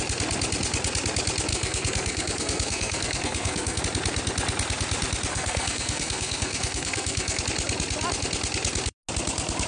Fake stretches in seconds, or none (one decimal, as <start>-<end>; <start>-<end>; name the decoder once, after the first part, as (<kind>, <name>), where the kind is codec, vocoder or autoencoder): 1.5-3.8 (codec, SNAC); 5.3-7.4